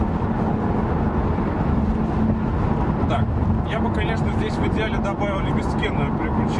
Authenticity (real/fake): real